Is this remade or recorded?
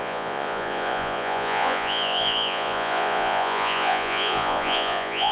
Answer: remade